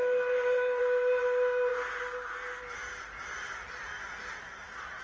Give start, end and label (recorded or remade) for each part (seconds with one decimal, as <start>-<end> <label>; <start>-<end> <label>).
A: 0.0-0.8 remade; 0.8-5.0 recorded